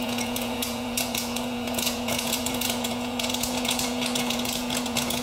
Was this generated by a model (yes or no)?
yes